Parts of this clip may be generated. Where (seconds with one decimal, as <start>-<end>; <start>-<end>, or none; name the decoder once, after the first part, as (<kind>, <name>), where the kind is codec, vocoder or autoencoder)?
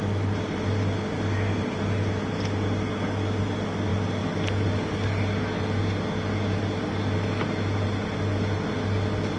none